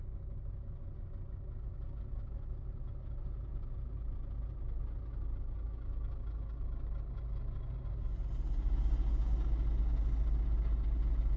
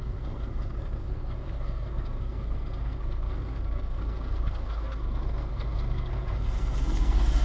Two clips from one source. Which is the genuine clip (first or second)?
first